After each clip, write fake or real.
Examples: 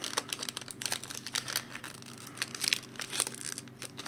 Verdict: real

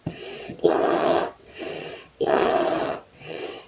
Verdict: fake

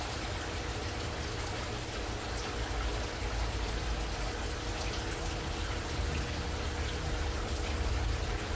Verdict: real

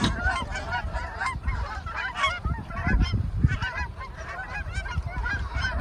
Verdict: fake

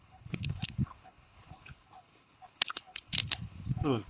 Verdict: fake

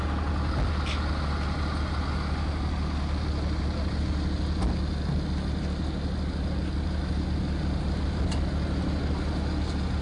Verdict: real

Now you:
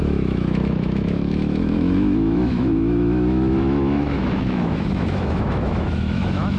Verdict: fake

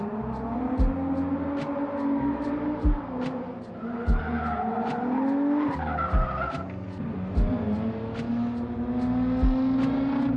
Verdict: real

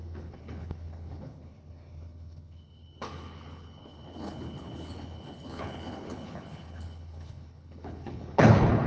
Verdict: fake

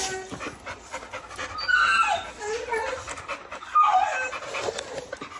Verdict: real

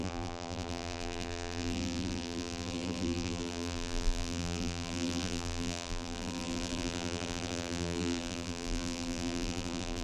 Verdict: fake